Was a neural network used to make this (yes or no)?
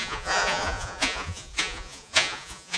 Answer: yes